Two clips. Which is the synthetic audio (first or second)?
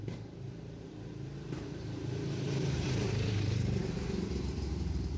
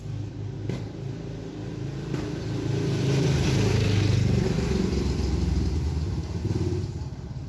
first